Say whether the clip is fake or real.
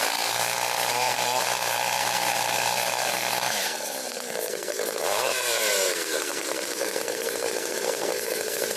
fake